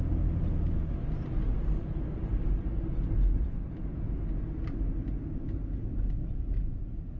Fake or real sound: real